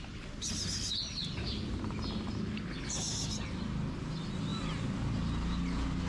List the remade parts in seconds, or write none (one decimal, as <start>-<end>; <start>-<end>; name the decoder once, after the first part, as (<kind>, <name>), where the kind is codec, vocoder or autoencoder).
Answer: none